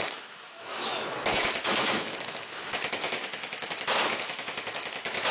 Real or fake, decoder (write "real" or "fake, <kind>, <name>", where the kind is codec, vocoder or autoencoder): fake, autoencoder, DAC-VAE